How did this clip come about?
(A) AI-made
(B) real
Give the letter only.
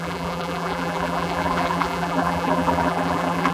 A